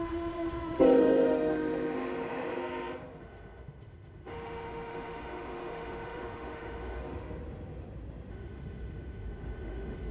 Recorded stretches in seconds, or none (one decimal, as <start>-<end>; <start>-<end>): 2.6-3.2; 7.0-8.3